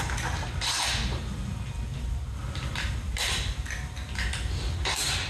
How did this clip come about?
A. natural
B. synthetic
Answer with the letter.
A